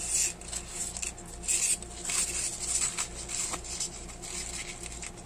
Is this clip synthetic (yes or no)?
no